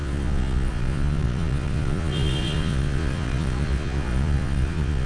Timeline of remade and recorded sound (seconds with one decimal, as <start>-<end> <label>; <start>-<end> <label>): 0.0-5.1 remade